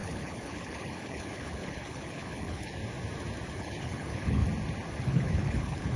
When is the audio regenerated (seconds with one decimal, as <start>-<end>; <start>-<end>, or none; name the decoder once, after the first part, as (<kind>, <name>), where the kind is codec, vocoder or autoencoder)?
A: 0.0-2.8 (codec, HILCodec); 3.5-4.4; 5.0-6.0